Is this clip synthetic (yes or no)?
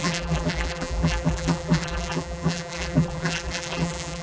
yes